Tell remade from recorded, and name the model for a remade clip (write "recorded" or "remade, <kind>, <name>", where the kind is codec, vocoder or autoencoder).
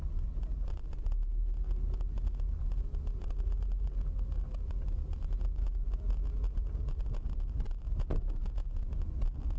recorded